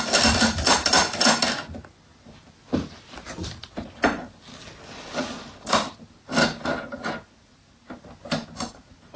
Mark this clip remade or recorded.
recorded